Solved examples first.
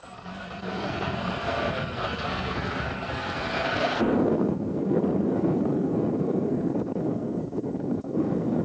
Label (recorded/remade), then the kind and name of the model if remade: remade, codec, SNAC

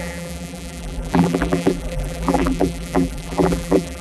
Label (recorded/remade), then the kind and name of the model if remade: remade, vocoder, BigVGAN v2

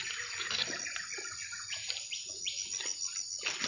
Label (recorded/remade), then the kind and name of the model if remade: recorded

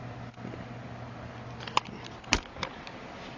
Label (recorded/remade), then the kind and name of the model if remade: recorded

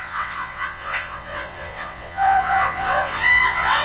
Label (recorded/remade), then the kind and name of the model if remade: remade, vocoder, WaveNeXt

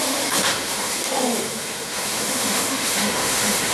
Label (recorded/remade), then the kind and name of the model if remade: remade, autoencoder, DAC-VAE